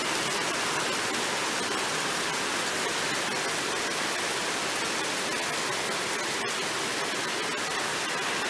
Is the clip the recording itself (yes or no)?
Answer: yes